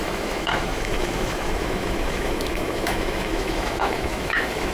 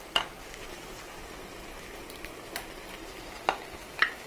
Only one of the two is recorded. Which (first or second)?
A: second